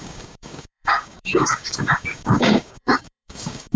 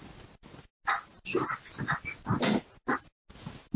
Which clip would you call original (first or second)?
second